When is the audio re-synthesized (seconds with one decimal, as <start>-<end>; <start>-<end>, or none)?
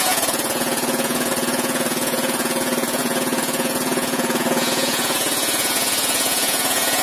0.0-7.0